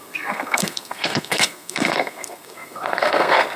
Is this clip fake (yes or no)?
yes